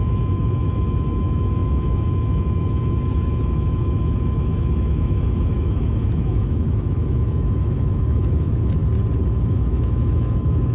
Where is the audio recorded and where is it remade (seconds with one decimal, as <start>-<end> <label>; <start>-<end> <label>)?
0.0-8.8 remade; 8.8-9.5 recorded; 9.5-10.7 remade